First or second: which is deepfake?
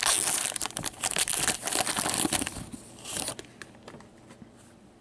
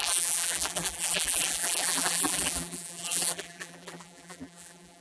second